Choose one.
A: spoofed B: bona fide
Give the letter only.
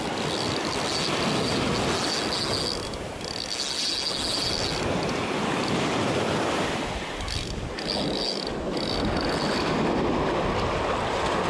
B